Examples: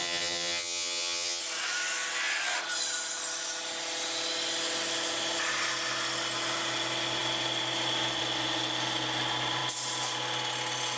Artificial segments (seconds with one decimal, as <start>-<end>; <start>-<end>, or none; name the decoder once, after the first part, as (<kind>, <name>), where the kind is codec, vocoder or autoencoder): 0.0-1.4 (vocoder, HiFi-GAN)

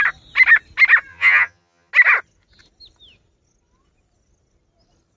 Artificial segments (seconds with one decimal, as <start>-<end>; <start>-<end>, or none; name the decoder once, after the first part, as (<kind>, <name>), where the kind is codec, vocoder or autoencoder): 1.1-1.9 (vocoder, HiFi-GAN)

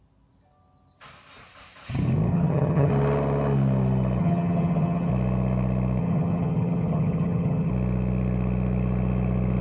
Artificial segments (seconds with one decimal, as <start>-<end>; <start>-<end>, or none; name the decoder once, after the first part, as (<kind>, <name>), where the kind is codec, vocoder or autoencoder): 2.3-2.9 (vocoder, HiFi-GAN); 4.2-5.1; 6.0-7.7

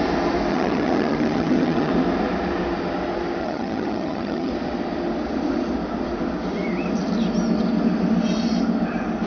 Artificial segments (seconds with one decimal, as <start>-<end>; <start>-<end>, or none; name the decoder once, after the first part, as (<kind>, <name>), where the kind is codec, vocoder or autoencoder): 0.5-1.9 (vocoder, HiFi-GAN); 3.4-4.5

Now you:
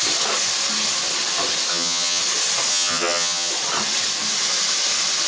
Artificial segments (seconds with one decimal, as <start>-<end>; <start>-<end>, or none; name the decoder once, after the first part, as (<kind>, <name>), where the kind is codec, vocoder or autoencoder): 1.7-2.2 (vocoder, HiFi-GAN); 2.7-3.5

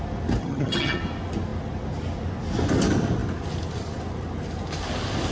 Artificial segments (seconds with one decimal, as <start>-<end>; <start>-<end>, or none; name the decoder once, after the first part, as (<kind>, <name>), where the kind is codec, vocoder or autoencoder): 0.4-1.0 (vocoder, HiFi-GAN)

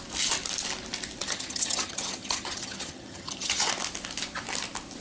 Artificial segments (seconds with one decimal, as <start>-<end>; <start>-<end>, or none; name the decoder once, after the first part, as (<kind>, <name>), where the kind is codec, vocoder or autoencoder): 1.2-3.7 (vocoder, HiFi-GAN)